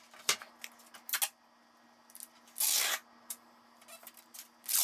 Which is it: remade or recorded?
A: recorded